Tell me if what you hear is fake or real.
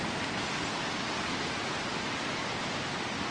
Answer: real